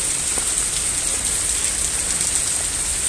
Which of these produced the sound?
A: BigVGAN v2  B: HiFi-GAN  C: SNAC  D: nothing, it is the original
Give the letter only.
D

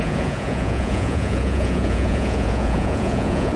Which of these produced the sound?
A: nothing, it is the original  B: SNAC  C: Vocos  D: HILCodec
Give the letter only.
C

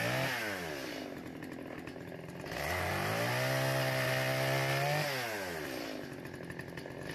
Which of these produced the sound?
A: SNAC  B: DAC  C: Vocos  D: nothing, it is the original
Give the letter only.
D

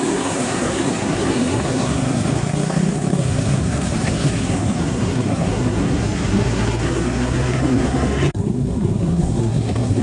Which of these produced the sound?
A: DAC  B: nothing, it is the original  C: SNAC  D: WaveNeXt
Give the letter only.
C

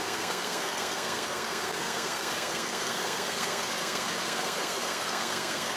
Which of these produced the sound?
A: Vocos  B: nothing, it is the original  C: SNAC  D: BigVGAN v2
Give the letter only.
C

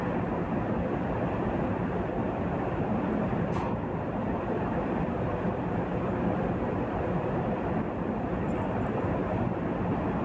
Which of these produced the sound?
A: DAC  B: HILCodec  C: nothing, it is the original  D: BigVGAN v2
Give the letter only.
D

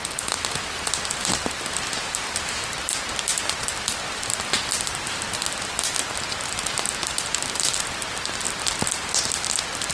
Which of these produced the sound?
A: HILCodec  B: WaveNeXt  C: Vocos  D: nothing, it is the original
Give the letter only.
D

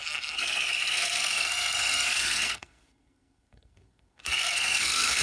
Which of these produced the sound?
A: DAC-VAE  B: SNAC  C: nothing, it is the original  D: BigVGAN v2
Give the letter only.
B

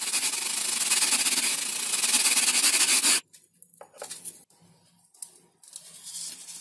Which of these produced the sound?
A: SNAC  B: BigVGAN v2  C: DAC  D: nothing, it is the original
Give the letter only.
D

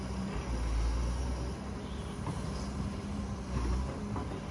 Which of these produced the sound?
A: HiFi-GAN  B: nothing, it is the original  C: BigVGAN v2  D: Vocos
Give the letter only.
B